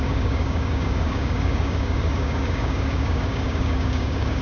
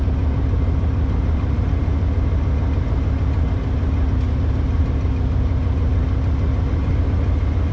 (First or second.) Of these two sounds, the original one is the second